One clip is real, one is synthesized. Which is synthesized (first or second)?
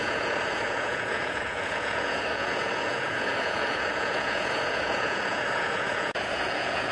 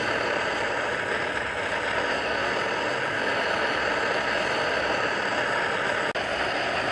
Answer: first